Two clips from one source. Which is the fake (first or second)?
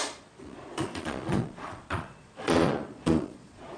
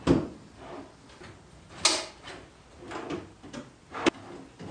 first